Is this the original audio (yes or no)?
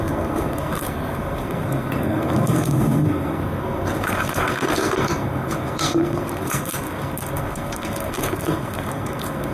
no